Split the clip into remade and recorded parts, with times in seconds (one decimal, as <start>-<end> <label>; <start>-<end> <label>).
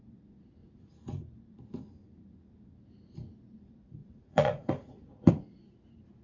0.0-0.6 recorded; 0.6-1.4 remade; 1.4-4.0 recorded; 4.0-5.3 remade; 5.3-6.2 recorded